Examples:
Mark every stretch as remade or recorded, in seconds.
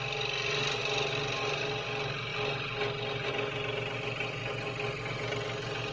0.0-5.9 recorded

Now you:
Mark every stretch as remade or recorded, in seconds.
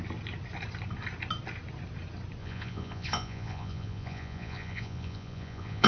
0.0-2.4 recorded; 2.4-5.9 remade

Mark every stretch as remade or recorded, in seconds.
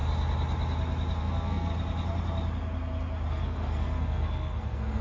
0.0-1.2 recorded; 1.2-1.7 remade; 1.7-3.3 recorded; 3.3-5.0 remade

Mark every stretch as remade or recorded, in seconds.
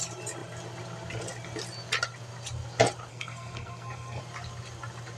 0.0-3.1 recorded; 3.1-4.2 remade; 4.2-5.2 recorded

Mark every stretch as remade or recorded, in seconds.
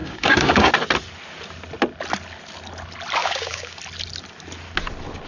0.0-0.7 remade; 0.7-3.2 recorded; 3.2-3.8 remade; 3.8-5.3 recorded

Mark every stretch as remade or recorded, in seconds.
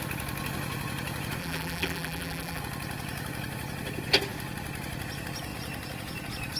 0.0-1.4 recorded; 1.4-2.6 remade; 2.6-6.6 recorded